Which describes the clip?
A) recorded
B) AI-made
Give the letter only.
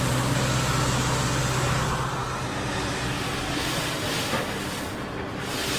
A